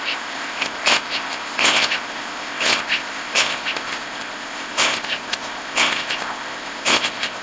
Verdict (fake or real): fake